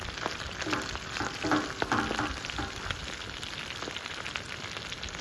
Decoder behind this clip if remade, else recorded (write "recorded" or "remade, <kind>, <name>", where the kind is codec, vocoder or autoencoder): recorded